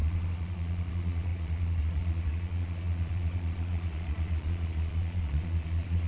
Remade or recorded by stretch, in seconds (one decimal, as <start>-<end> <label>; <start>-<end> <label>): 0.0-6.1 remade